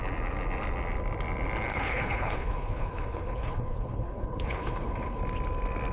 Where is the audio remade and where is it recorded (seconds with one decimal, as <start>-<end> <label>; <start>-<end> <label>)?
0.0-1.7 recorded; 1.7-5.2 remade; 5.2-5.9 recorded